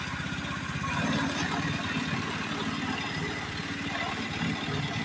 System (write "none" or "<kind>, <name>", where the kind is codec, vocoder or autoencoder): none